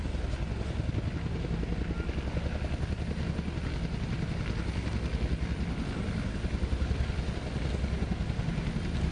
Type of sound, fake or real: real